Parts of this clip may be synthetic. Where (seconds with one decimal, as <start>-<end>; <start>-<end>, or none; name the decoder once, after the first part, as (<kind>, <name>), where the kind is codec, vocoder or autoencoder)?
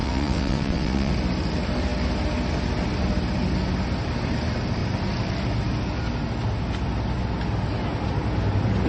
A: 0.0-1.1 (vocoder, WaveNeXt)